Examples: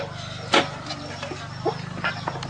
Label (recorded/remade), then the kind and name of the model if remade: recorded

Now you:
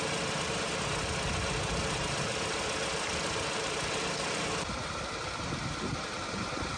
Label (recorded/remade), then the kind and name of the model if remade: recorded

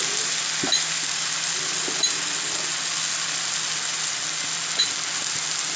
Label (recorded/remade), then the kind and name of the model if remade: recorded